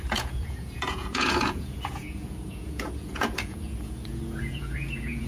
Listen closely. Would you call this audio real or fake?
fake